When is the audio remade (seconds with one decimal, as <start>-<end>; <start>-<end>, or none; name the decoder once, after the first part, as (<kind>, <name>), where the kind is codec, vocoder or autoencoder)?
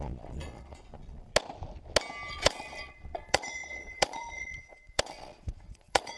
0.0-1.3 (vocoder, Vocos); 2.3-6.2